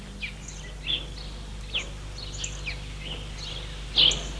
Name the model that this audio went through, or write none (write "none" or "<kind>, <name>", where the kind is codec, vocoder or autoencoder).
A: none